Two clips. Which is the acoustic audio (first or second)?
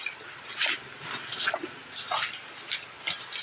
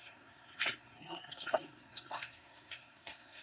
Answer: first